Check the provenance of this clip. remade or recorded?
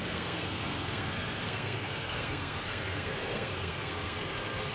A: remade